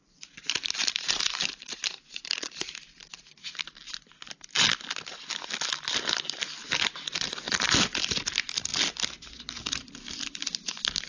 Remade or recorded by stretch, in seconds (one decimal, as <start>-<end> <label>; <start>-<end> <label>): 0.0-0.8 recorded; 0.8-2.7 remade; 2.7-6.6 recorded; 6.6-7.7 remade; 7.7-11.1 recorded